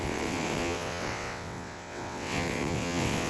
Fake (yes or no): yes